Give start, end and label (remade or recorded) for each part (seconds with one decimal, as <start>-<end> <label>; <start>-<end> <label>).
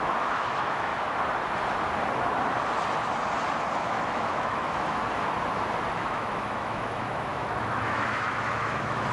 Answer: 0.0-0.9 remade; 0.9-3.8 recorded; 3.8-5.0 remade; 5.0-5.9 recorded; 5.9-9.1 remade